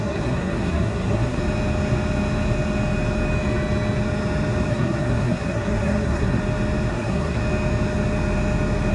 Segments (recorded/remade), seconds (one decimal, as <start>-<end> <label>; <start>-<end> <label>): 0.0-1.4 remade; 1.4-4.7 recorded; 4.7-6.4 remade; 6.4-6.9 recorded; 6.9-7.4 remade; 7.4-8.9 recorded